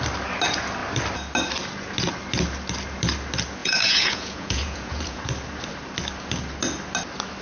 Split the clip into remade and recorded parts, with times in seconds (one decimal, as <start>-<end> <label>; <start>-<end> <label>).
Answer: 0.0-3.6 recorded; 3.6-5.2 remade; 5.2-7.4 recorded